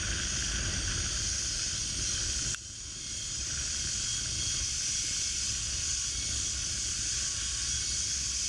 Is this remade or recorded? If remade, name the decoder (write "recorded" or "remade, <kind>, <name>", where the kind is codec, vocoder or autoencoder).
recorded